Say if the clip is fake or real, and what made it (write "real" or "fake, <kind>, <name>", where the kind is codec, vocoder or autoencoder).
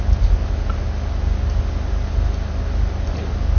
real